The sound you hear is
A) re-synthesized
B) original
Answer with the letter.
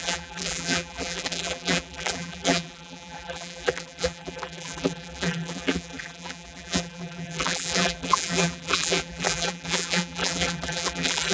A